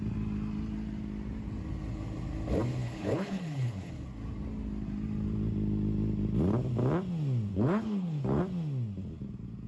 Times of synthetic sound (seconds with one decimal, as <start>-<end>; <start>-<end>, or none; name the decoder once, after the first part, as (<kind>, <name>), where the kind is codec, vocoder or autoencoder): 2.8-3.9 (codec, HILCodec); 7.5-8.4